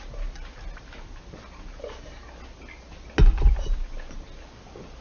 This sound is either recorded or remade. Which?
recorded